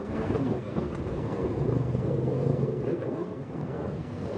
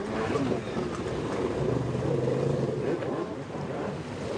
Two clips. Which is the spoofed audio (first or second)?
first